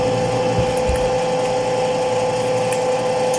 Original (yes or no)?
yes